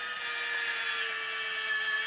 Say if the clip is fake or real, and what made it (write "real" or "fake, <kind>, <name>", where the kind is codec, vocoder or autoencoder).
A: real